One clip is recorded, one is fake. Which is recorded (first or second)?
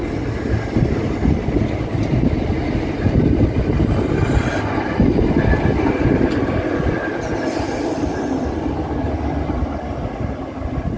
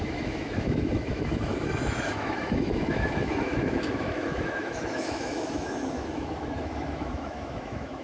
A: first